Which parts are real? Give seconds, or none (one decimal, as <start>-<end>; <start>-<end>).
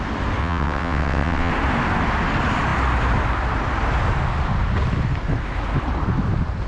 0.0-0.4; 1.5-6.7